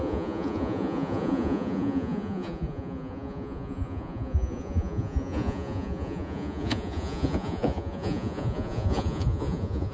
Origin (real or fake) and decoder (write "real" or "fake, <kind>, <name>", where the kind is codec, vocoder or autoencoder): fake, vocoder, Vocos